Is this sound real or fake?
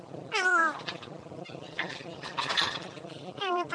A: fake